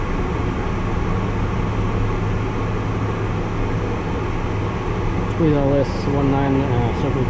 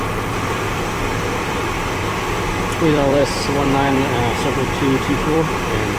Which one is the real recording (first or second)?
first